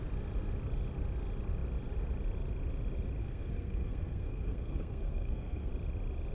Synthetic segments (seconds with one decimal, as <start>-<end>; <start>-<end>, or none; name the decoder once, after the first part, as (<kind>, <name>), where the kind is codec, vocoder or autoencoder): 3.2-5.7 (codec, SNAC)